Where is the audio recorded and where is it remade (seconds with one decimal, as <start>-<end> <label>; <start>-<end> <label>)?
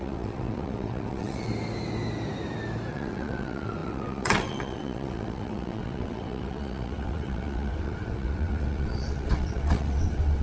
0.0-1.5 remade; 1.5-2.9 recorded; 2.9-10.4 remade